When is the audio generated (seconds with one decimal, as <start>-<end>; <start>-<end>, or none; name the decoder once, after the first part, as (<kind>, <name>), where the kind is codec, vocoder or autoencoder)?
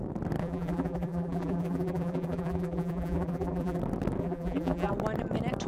0.4-3.8 (vocoder, BigVGAN v2); 4.2-4.9